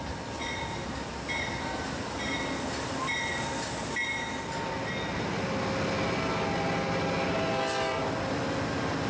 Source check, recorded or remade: recorded